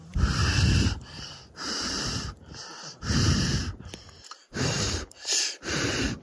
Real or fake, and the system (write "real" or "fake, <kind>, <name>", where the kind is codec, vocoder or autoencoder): fake, vocoder, BigVGAN v2